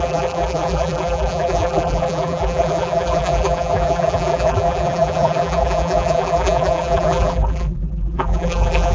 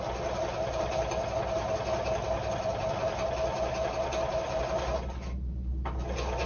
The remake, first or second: first